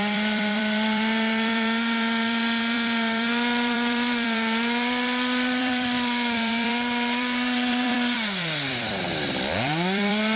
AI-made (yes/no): yes